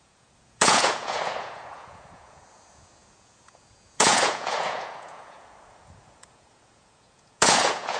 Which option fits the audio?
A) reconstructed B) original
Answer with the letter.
A